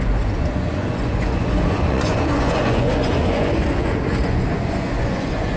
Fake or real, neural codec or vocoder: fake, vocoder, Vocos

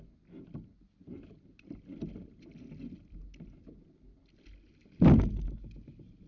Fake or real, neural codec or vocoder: real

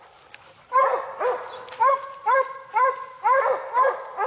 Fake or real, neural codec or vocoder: real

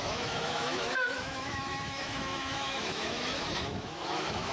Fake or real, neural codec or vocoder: fake, autoencoder, DAC-VAE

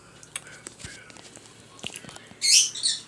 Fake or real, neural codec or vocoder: real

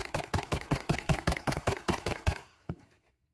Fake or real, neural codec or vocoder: fake, codec, SNAC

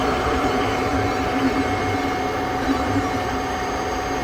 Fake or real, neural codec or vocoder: fake, vocoder, BigVGAN v2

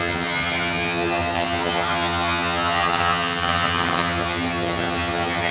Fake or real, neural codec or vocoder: fake, vocoder, HiFi-GAN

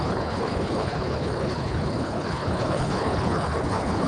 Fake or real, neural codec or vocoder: fake, codec, HILCodec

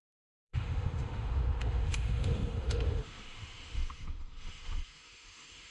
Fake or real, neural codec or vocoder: fake, autoencoder, DAC-VAE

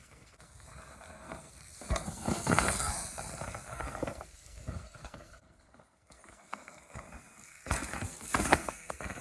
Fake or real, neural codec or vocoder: fake, codec, SNAC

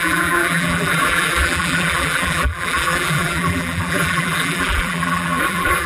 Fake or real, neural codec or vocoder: fake, vocoder, BigVGAN v2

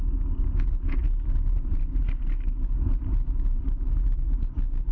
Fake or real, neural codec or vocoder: real